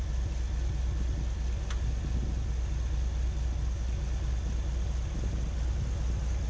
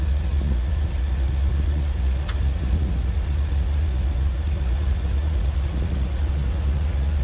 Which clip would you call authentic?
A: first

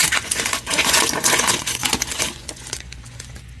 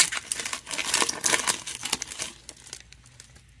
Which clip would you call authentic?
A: second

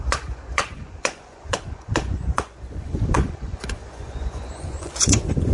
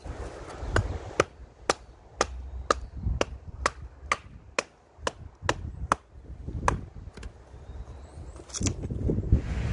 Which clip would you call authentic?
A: second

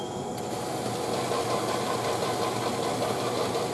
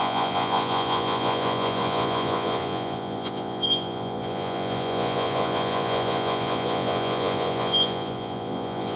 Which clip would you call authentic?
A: first